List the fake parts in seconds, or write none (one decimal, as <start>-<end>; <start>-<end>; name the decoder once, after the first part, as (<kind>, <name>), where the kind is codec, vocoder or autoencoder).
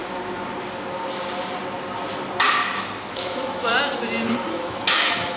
3.1-3.7 (autoencoder, DAC-VAE); 4.5-5.4